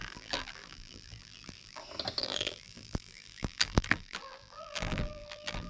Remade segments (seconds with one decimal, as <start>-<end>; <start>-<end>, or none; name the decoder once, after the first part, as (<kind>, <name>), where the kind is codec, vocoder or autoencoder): 0.0-1.8 (vocoder, BigVGAN v2); 2.2-5.7